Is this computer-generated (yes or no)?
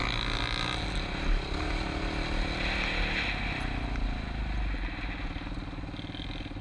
no